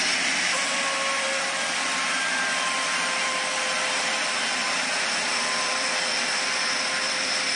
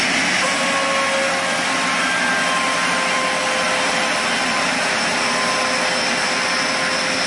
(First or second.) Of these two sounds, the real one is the second